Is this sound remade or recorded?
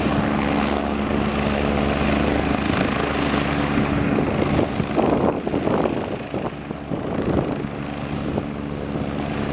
recorded